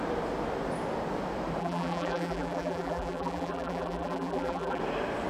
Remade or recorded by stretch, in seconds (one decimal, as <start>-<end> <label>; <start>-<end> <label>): 0.0-1.6 recorded; 1.6-4.8 remade; 4.8-5.3 recorded